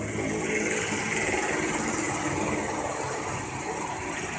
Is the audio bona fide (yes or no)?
yes